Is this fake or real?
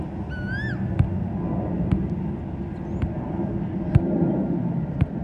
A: real